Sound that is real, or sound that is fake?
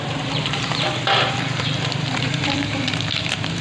fake